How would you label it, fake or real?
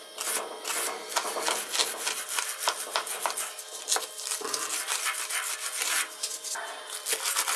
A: real